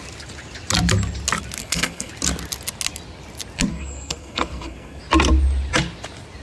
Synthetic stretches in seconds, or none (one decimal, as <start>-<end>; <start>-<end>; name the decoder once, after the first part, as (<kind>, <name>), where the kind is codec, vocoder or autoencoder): 1.6-2.1 (codec, SNAC); 3.7-5.0

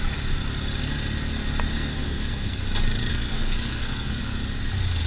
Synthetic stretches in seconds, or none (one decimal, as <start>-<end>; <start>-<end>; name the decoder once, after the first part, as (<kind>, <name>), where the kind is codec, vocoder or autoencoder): 1.7-2.6 (codec, SNAC); 3.1-4.2

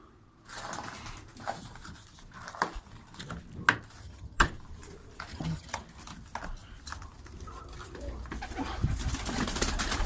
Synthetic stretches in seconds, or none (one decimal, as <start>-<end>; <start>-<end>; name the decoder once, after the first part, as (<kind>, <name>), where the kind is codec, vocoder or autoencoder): 4.0-4.5 (vocoder, HiFi-GAN); 5.3-5.8

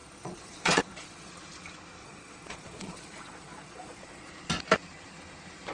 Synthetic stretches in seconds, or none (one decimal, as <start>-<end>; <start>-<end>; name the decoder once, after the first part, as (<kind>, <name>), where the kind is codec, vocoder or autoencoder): 0.0-1.3 (vocoder, Vocos); 2.0-4.3

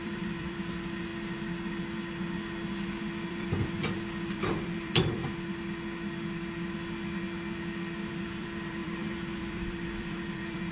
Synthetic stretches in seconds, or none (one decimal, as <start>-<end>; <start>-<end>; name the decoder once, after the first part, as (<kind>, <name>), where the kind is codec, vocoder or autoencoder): 0.0-1.1 (vocoder, BigVGAN v2); 3.3-5.2; 8.1-10.7

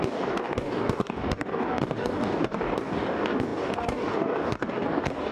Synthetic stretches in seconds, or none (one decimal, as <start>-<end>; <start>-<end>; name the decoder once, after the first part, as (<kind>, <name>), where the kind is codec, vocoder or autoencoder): 0.0-5.3 (codec, DAC)

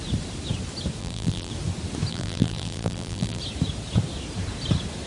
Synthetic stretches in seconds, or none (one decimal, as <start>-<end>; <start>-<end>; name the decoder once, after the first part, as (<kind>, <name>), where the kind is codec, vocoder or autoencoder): 1.0-1.5 (vocoder, BigVGAN v2); 2.1-3.4

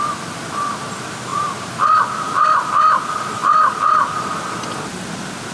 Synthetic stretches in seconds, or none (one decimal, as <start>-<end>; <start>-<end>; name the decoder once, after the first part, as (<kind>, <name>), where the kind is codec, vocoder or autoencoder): none